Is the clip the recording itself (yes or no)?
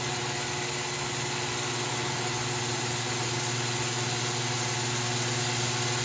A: yes